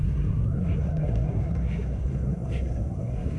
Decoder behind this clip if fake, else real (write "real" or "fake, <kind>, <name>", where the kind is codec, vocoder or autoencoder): fake, codec, SNAC